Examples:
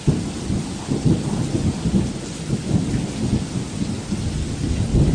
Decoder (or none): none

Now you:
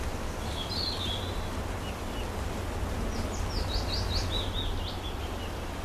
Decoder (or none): none